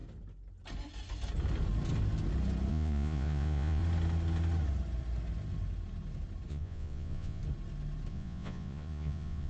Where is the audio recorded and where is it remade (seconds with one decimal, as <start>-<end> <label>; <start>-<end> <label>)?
0.0-2.7 recorded; 2.7-3.8 remade; 3.8-6.5 recorded; 6.5-7.4 remade; 7.4-8.1 recorded; 8.1-9.5 remade